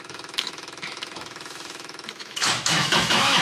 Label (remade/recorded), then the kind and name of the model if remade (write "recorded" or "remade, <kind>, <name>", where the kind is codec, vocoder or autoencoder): remade, autoencoder, DAC-VAE